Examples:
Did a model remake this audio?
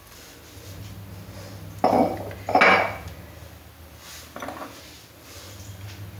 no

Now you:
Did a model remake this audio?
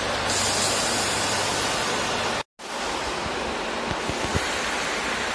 no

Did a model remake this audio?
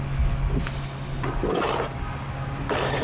no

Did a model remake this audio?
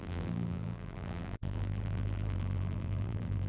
yes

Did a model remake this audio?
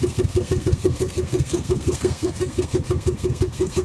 yes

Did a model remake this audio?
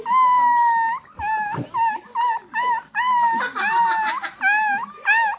no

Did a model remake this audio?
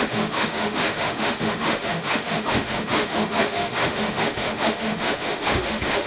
yes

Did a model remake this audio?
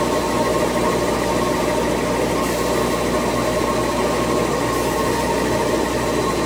no